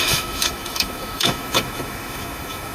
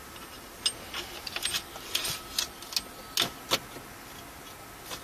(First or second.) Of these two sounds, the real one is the second